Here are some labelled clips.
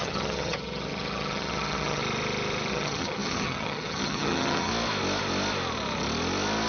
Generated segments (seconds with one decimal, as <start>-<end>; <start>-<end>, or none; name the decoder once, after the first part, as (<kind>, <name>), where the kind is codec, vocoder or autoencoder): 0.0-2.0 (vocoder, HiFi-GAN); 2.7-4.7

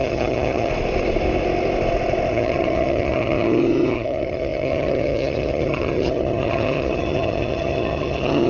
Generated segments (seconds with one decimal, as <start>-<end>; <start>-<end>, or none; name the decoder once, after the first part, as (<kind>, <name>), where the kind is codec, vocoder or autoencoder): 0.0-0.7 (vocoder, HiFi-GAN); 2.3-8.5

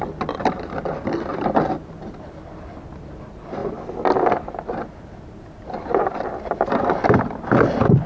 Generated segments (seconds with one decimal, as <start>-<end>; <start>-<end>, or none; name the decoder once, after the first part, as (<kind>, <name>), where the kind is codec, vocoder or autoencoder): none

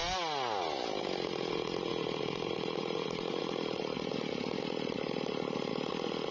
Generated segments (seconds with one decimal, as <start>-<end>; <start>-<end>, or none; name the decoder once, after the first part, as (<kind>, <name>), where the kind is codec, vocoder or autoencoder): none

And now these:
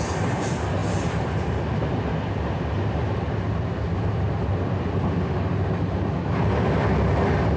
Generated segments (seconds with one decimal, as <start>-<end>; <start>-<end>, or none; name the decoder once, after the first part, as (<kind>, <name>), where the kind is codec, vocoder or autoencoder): none

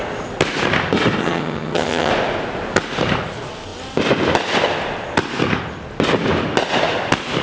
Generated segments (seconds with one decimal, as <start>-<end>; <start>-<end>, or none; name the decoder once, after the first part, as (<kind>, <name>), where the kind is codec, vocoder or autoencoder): 1.2-2.1 (vocoder, HiFi-GAN)

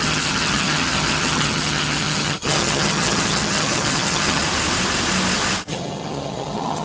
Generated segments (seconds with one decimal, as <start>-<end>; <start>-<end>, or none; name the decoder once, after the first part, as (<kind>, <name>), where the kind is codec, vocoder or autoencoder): 0.0-4.4 (vocoder, HiFi-GAN); 5.7-6.8